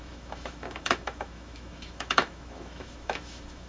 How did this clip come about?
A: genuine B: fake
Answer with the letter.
B